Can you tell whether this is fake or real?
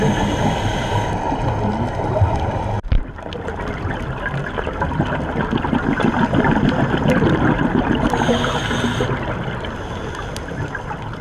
real